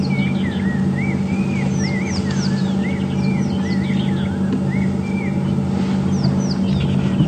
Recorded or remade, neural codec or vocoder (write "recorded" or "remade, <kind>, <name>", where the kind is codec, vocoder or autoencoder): recorded